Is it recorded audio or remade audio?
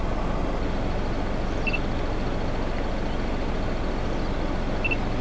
recorded